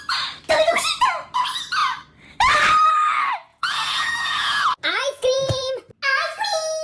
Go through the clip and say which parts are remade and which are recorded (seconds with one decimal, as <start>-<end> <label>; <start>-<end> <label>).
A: 0.0-3.5 recorded; 3.5-5.7 remade; 5.7-6.8 recorded